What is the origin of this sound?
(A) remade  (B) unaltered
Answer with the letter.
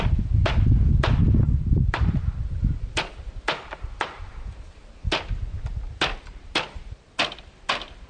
B